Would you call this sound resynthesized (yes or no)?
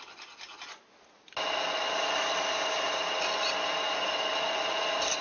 no